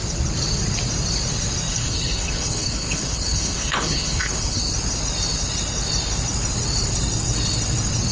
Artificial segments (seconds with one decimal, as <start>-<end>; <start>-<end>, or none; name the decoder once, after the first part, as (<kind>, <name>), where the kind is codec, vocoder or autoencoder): 1.7-4.6 (codec, HILCodec)